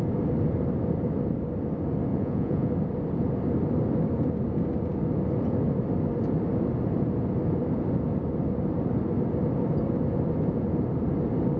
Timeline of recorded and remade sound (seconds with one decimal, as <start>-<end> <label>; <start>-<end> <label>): 0.0-2.1 recorded; 2.1-2.7 remade; 2.7-11.6 recorded